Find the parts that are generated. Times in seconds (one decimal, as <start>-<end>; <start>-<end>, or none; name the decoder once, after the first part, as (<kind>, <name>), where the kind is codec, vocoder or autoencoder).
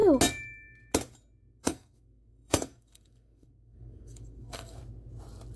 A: 1.6-4.8 (codec, SNAC)